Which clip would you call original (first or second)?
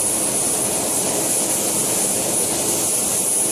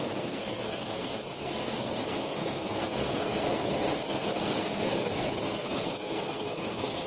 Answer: first